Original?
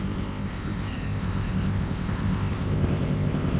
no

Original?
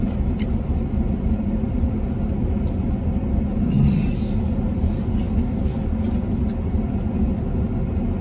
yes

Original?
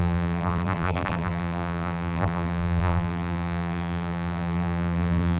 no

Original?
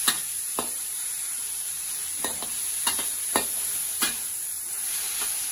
no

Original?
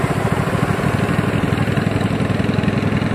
yes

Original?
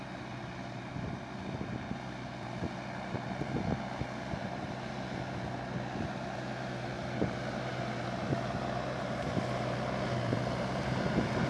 yes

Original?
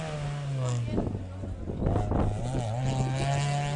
yes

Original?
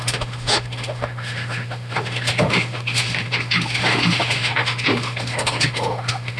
no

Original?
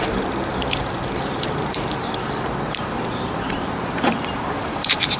no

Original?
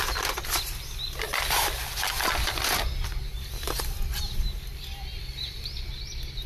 yes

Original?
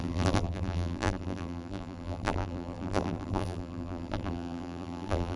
no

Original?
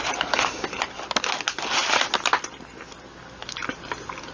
yes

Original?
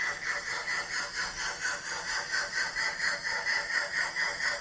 no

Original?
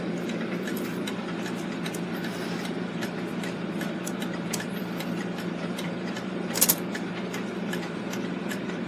no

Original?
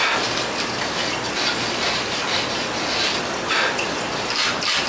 yes